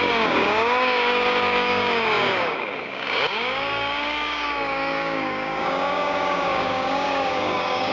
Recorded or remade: remade